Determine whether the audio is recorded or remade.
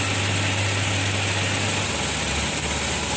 recorded